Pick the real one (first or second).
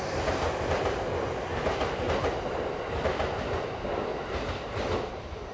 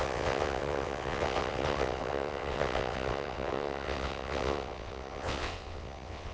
first